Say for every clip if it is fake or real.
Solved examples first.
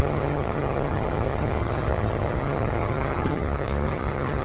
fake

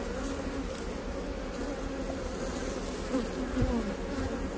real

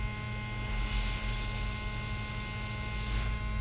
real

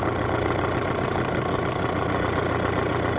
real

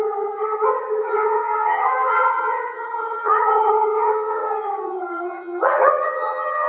fake